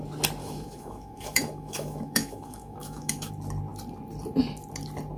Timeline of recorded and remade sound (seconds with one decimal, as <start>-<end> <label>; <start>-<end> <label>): 0.0-0.4 recorded; 0.4-3.3 remade; 3.3-5.2 recorded